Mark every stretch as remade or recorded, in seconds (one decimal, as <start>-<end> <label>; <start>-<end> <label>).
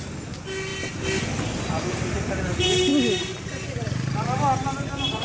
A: 0.0-5.2 recorded